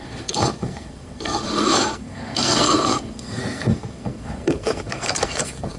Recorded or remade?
remade